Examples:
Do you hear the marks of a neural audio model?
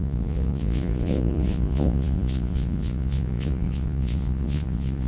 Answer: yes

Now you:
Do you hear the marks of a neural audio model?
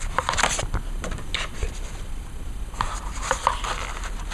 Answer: no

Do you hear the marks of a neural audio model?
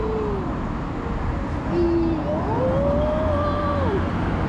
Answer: no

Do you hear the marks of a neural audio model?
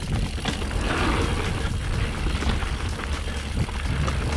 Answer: no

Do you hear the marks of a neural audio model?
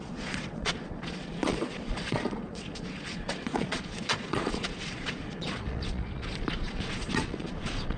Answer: yes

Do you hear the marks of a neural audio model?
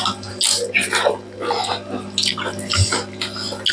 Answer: no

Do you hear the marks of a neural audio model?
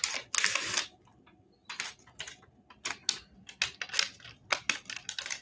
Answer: no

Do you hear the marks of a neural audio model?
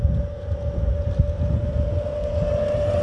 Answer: no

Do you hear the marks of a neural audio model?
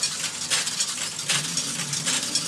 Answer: no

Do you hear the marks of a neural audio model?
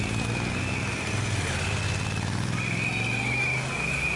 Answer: no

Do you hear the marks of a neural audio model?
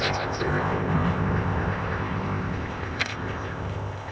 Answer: yes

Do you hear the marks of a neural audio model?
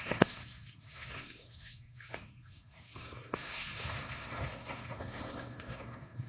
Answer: yes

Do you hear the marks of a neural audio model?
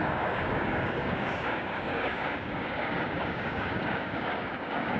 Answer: yes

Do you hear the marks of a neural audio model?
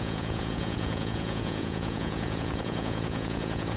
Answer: yes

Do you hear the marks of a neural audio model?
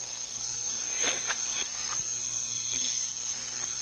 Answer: yes